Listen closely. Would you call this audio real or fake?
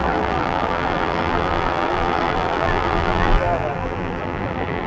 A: fake